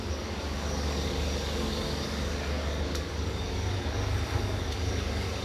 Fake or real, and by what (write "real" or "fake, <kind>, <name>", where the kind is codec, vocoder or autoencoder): fake, codec, DAC